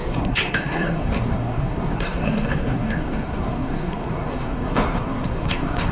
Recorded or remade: remade